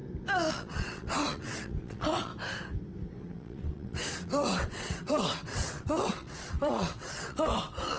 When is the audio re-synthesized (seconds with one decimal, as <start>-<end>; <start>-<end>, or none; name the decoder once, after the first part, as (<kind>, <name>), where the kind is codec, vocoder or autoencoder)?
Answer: 0.5-2.3 (vocoder, WaveNeXt); 3.2-8.0